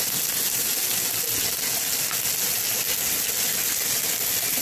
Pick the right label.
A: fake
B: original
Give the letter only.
B